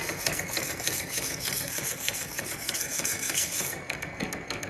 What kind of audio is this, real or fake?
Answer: fake